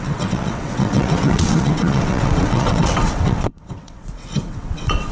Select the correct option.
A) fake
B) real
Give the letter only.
A